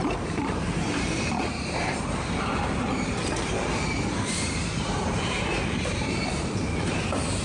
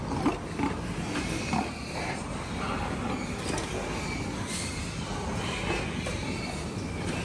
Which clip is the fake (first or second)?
first